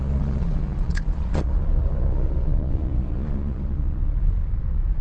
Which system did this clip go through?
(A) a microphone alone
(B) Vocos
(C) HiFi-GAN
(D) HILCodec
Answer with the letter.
B